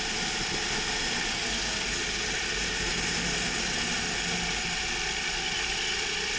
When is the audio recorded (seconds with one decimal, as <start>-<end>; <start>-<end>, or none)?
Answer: 0.0-6.4